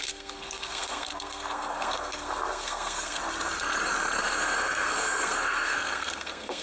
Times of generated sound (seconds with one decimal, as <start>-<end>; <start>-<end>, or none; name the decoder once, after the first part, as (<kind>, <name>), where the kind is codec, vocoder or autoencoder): 0.0-3.2 (codec, SNAC); 4.2-6.6